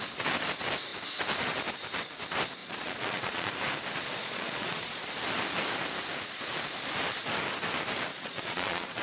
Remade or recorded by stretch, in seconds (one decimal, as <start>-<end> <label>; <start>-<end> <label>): 0.0-2.6 recorded; 2.6-3.5 remade; 3.5-4.2 recorded; 4.2-5.0 remade; 5.0-8.1 recorded; 8.1-9.0 remade